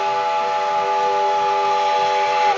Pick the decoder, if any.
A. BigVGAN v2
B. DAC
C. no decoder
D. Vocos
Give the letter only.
C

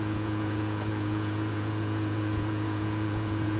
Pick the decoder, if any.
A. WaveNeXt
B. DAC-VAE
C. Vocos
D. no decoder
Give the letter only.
C